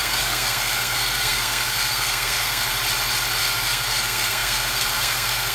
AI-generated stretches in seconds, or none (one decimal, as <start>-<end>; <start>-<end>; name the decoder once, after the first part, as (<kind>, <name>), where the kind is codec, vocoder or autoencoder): 0.0-2.7 (codec, SNAC); 3.4-5.5